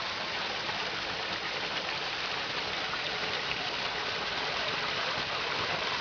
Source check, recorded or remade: recorded